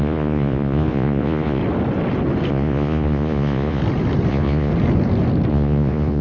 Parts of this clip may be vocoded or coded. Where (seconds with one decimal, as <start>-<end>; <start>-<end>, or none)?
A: 0.0-1.6; 2.5-3.8; 4.3-4.7; 5.5-6.2